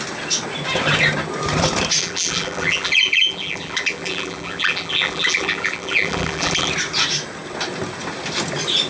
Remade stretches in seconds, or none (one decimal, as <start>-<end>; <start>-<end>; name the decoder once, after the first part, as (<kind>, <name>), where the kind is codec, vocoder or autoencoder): 2.0-6.7 (vocoder, BigVGAN v2)